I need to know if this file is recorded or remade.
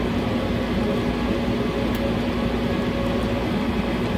recorded